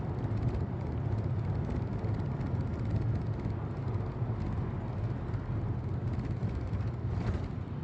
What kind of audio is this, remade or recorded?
recorded